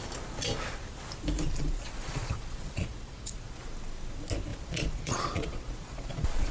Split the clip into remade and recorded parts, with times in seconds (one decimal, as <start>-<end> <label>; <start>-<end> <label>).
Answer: 0.0-1.6 recorded; 1.6-3.7 remade; 3.7-4.5 recorded; 4.5-6.5 remade